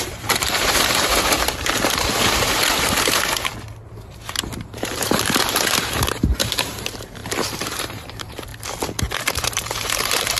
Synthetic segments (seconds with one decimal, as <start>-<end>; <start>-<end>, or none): 0.0-1.1; 4.5-8.5; 9.1-10.4

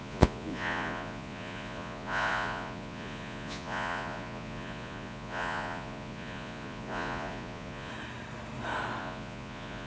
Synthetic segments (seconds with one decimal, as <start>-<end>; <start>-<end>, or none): 0.0-7.9; 9.0-9.9

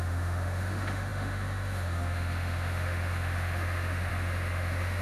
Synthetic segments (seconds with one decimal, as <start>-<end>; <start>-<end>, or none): 0.0-5.0

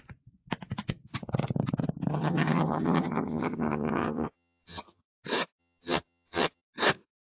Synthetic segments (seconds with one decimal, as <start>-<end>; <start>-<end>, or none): 2.1-5.0; 5.6-6.6

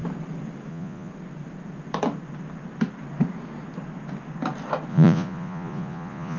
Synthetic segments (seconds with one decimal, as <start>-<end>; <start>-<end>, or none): 0.7-1.1; 4.9-6.4